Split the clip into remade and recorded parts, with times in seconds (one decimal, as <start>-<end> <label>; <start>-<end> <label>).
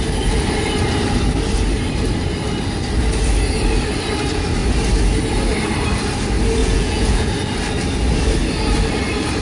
0.0-6.6 recorded; 6.6-7.3 remade; 7.3-9.4 recorded